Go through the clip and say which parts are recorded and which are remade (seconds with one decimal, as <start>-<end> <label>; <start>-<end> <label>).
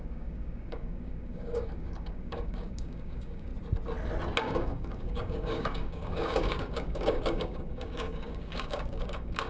0.0-3.5 remade; 3.5-4.4 recorded; 4.4-9.5 remade